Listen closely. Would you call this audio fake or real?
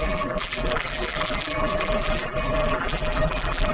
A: fake